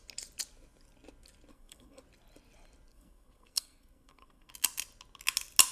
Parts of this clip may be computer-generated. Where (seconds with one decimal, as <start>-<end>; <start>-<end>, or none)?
1.5-2.0; 2.9-4.5